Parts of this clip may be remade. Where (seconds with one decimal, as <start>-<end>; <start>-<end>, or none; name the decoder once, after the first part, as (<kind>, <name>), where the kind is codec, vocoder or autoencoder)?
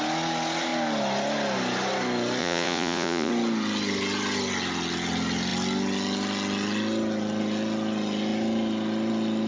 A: 2.4-3.3 (vocoder, Vocos)